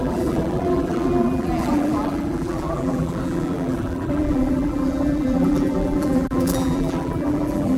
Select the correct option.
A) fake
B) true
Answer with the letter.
A